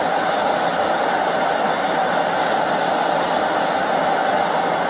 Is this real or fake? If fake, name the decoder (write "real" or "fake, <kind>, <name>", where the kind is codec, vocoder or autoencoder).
real